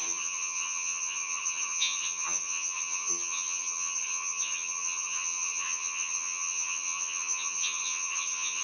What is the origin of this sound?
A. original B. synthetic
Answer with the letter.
B